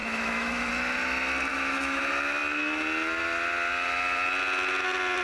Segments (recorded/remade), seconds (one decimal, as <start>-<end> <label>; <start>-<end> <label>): 0.0-0.7 remade; 0.7-1.5 recorded; 1.5-2.0 remade; 2.0-5.2 recorded